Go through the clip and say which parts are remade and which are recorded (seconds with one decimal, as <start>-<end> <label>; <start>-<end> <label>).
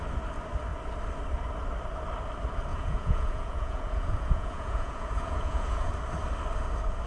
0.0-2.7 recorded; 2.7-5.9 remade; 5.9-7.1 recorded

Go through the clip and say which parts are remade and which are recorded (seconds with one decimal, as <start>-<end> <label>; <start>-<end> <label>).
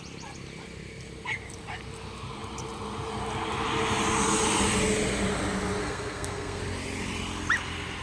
0.0-5.8 recorded; 5.8-6.6 remade; 6.6-8.0 recorded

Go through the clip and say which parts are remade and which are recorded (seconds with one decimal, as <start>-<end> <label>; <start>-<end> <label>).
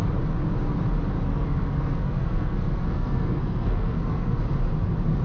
0.0-1.3 recorded; 1.3-4.4 remade; 4.4-5.2 recorded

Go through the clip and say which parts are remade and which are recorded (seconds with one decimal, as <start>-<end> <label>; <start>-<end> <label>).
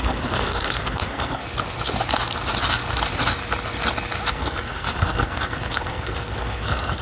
0.0-1.4 remade; 1.4-4.3 recorded; 4.3-7.0 remade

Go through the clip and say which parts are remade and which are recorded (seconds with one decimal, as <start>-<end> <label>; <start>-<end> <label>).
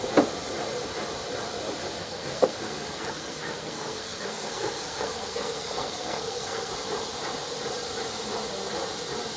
0.0-2.0 recorded; 2.0-6.7 remade; 6.7-9.4 recorded